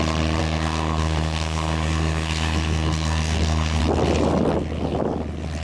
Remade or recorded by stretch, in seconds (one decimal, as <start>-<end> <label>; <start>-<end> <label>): 0.0-0.4 recorded; 0.4-3.8 remade; 3.8-5.6 recorded